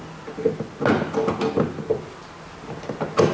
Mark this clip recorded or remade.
recorded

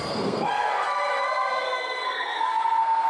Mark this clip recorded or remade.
remade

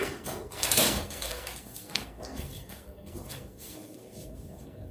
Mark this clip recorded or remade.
remade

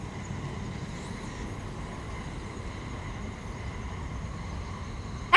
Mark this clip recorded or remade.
recorded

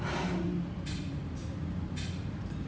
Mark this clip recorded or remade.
recorded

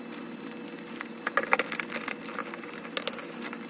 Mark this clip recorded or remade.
recorded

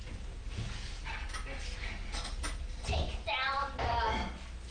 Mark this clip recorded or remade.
recorded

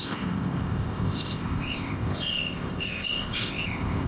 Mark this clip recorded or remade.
remade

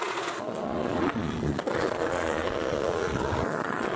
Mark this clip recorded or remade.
remade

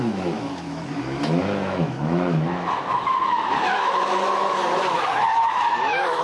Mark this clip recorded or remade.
remade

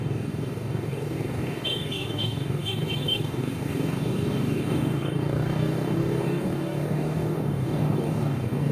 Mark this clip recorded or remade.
remade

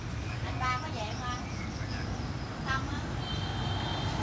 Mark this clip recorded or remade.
recorded